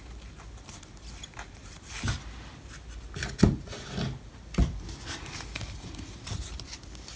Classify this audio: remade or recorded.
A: recorded